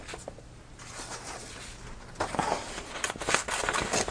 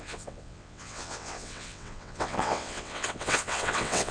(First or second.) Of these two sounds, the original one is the first